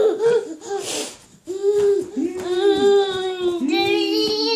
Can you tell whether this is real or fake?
real